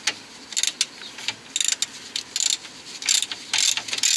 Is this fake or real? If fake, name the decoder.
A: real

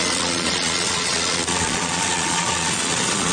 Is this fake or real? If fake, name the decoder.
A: fake, vocoder, Vocos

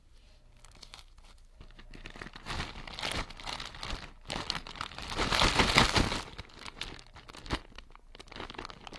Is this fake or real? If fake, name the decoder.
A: real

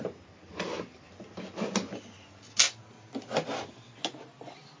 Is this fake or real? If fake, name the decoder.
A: real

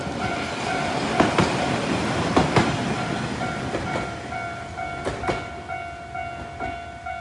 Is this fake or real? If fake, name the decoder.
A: real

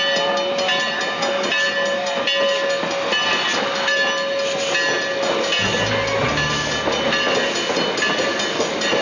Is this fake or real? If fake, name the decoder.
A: real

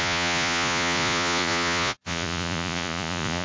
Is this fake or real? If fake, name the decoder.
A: fake, vocoder, Vocos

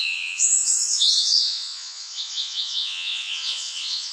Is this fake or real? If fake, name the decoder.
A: fake, vocoder, Vocos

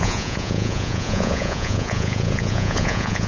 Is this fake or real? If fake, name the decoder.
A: fake, vocoder, Vocos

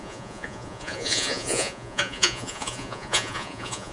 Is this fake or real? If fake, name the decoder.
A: fake, vocoder, Vocos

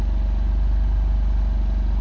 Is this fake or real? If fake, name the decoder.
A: real